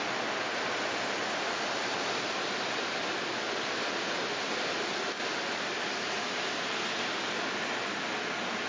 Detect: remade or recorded recorded